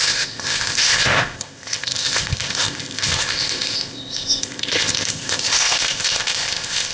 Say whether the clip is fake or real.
fake